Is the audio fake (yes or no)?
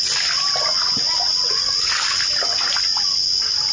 no